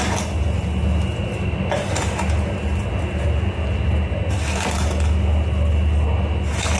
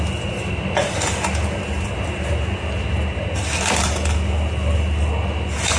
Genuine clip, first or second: first